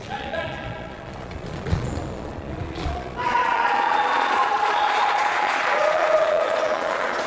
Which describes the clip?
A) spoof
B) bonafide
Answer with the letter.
A